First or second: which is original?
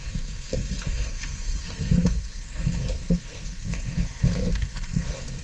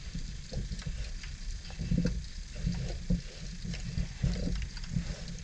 second